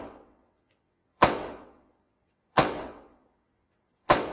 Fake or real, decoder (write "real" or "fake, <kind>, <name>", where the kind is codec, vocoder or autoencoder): fake, vocoder, WaveNeXt